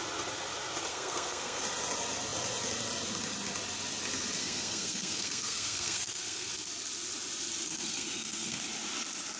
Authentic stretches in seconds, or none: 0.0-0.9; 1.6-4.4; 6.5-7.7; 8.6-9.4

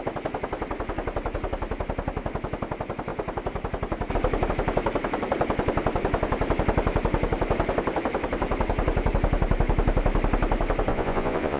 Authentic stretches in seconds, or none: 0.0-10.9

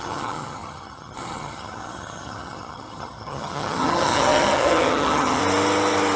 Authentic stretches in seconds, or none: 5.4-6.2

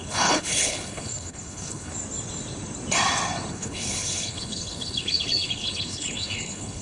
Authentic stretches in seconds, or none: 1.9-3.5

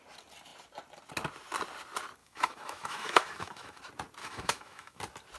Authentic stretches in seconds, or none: 0.0-2.2; 3.8-4.2; 5.0-5.4

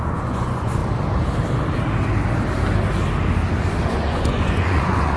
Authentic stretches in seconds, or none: 0.8-3.9

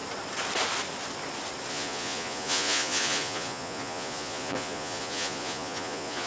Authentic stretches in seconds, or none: 0.0-1.7